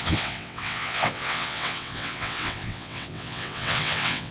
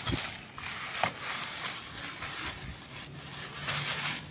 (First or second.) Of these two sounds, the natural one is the second